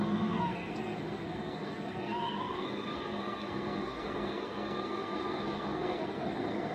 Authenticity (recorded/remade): remade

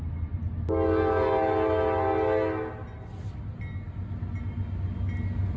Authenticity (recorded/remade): recorded